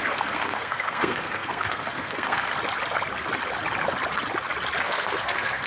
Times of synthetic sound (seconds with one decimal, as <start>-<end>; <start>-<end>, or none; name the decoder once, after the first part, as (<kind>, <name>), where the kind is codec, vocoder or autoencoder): 0.0-2.5 (codec, SNAC); 4.8-5.7